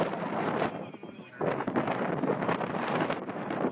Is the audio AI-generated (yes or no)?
no